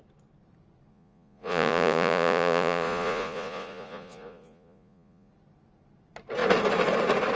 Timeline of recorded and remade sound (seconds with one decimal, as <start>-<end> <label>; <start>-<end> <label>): 0.0-0.9 recorded; 0.9-5.3 remade; 5.3-7.4 recorded